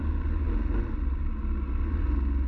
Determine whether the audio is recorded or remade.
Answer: recorded